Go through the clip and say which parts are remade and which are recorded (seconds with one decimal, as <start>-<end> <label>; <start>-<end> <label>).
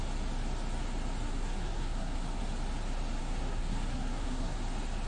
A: 0.0-1.3 recorded; 1.3-2.4 remade; 2.4-3.2 recorded; 3.2-4.6 remade; 4.6-5.1 recorded